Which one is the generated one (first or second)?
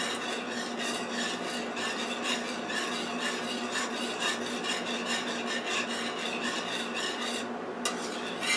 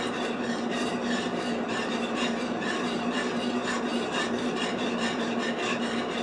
second